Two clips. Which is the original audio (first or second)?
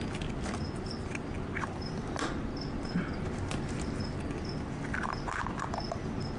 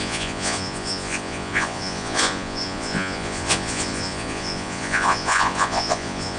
first